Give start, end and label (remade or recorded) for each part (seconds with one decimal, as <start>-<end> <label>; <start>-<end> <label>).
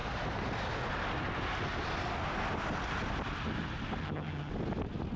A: 0.0-4.0 recorded; 4.0-4.5 remade; 4.5-5.2 recorded